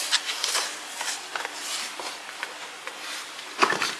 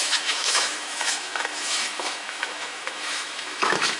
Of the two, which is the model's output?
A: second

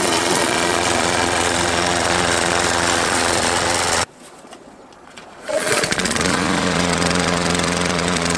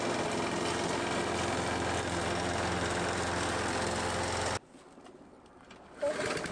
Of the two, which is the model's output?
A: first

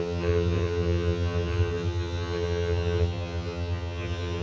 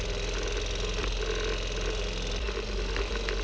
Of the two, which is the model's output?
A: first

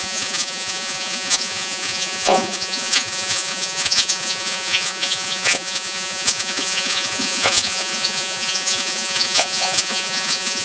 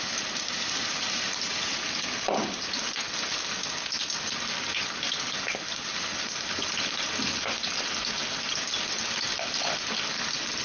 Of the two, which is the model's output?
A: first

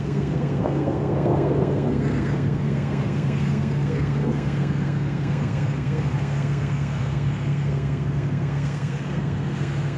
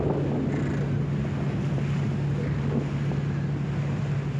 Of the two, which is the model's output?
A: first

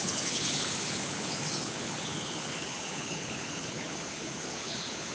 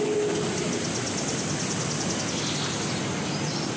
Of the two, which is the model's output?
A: first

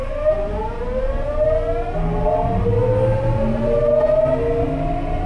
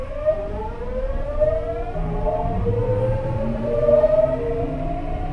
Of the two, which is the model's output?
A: second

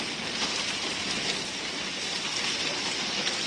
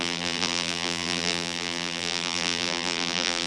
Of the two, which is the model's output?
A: second